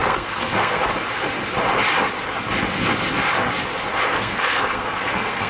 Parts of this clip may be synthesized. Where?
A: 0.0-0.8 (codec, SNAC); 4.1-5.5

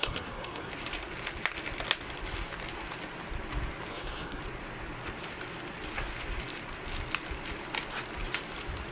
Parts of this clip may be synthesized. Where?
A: 0.0-0.7 (codec, SNAC); 3.9-4.4